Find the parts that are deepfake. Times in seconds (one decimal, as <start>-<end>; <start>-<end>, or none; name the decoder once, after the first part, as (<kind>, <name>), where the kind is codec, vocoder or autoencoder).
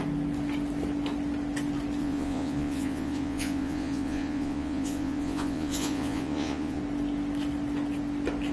2.0-6.8 (vocoder, Vocos)